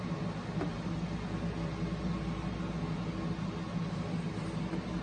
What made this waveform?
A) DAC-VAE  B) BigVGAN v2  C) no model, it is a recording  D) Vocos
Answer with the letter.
C